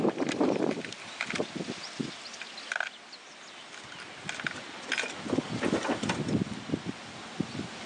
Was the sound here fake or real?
real